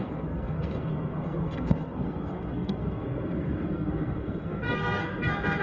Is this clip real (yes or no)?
no